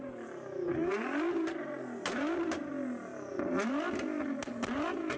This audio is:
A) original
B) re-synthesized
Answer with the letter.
A